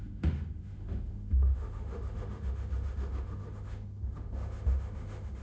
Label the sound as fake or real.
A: fake